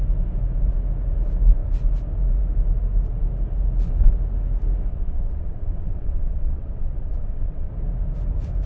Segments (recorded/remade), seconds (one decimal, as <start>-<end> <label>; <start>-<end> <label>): 0.0-4.9 recorded; 4.9-7.7 remade; 7.7-8.7 recorded

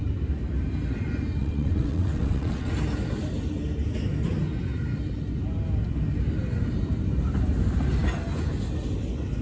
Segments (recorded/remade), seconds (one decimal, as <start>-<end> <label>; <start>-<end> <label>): 0.0-1.4 recorded; 1.4-2.7 remade; 2.7-9.4 recorded

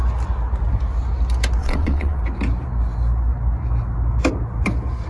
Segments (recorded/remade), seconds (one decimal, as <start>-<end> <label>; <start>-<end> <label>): 0.0-1.6 recorded; 1.6-2.2 remade; 2.2-5.1 recorded

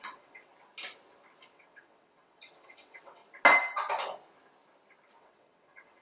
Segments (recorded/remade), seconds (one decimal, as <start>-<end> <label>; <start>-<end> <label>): 0.0-0.5 remade; 0.5-1.5 recorded; 1.5-3.2 remade; 3.2-5.2 recorded; 5.2-6.0 remade

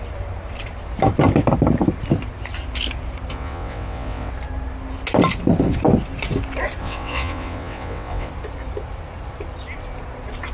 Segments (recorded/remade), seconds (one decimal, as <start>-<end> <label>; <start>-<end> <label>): 0.0-3.3 recorded; 3.3-4.3 remade; 4.3-6.8 recorded; 6.8-8.3 remade; 8.3-10.5 recorded

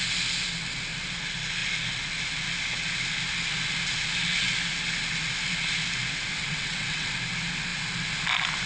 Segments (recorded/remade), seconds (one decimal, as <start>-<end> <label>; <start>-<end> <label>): 0.0-6.3 recorded; 6.3-7.1 remade; 7.1-8.7 recorded

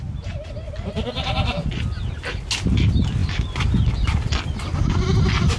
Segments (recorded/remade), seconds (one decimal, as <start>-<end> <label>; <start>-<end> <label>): 0.0-5.6 recorded

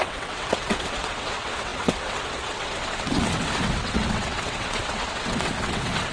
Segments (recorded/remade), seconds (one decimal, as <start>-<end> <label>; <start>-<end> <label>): 0.0-6.1 remade